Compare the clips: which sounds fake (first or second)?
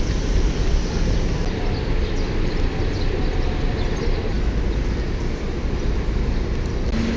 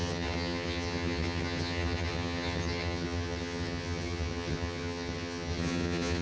second